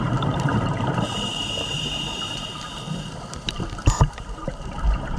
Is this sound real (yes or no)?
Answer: no